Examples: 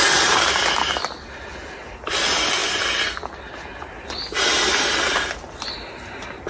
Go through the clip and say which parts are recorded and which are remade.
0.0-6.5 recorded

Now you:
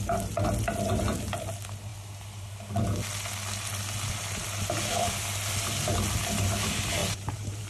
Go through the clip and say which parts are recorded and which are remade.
0.0-7.0 recorded; 7.0-7.7 remade

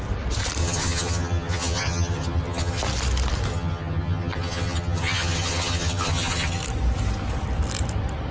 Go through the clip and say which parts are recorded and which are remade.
0.0-0.6 recorded; 0.6-2.8 remade; 2.8-3.5 recorded; 3.5-6.6 remade; 6.6-8.3 recorded

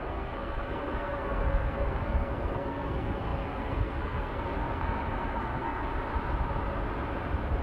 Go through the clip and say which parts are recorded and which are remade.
0.0-5.9 remade; 5.9-7.6 recorded